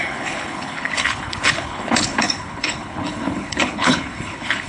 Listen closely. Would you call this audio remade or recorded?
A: remade